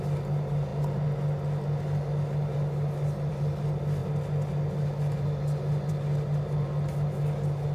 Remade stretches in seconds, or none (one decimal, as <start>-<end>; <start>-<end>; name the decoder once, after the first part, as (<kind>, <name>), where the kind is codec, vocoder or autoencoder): none